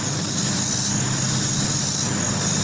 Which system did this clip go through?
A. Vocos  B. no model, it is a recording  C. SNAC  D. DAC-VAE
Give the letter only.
B